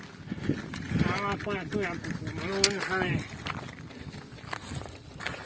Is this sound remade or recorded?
recorded